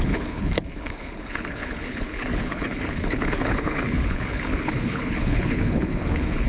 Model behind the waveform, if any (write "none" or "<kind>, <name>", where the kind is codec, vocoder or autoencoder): codec, HILCodec